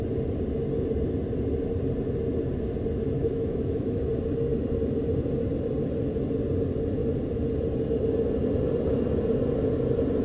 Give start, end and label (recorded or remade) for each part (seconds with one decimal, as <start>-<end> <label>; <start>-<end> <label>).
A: 0.0-3.2 recorded; 3.2-4.0 remade; 4.0-10.2 recorded